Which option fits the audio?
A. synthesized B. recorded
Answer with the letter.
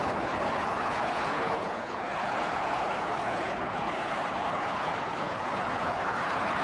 A